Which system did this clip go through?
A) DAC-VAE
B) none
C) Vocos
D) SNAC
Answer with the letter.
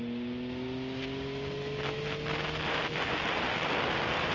B